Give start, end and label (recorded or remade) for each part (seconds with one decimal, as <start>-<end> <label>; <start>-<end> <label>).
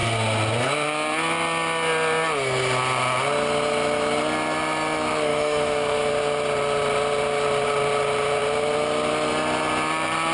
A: 0.0-5.3 recorded; 5.3-6.1 remade; 6.1-10.3 recorded